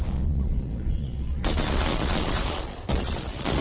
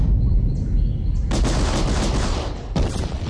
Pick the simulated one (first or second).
first